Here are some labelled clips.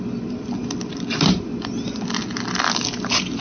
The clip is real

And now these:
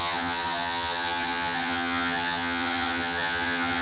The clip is fake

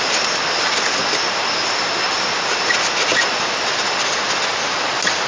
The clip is real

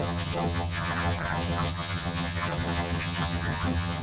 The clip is fake